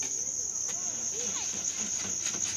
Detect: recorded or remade recorded